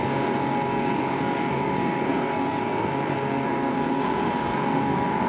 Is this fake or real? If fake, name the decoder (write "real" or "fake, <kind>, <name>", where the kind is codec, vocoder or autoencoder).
fake, codec, SNAC